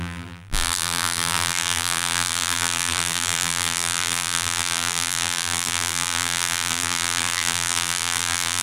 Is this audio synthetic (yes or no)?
yes